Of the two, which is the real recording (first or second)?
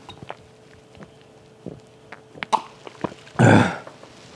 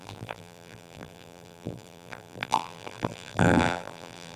first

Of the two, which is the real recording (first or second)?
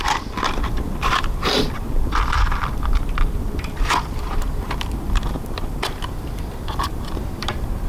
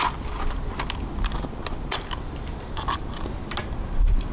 second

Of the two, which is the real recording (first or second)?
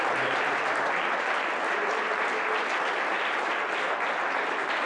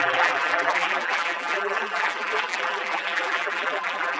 first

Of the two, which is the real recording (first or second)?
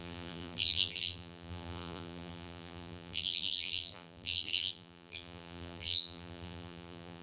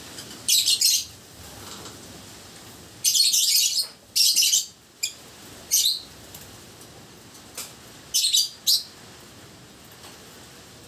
second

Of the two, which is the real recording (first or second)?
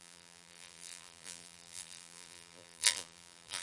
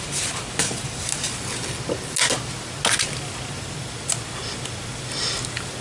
second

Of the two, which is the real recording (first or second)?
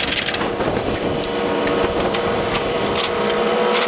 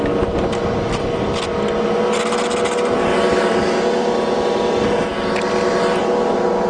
second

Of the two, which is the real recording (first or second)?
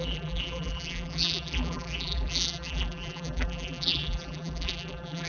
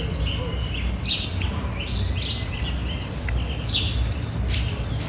second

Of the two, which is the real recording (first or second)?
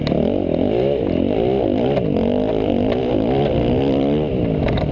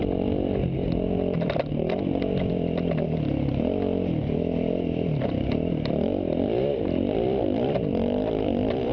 first